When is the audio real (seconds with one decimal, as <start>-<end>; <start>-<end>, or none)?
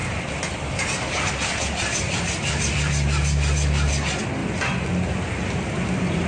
1.3-4.4